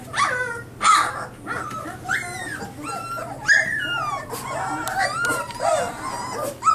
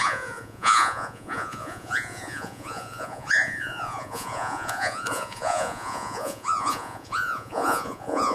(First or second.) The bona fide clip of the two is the first